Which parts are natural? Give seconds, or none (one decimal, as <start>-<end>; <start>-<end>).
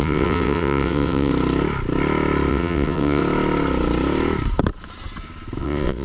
1.3-2.5; 3.2-5.6